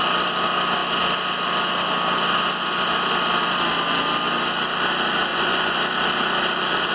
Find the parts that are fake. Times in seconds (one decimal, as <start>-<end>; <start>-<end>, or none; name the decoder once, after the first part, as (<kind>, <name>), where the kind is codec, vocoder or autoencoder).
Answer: 5.3-5.8 (vocoder, Vocos)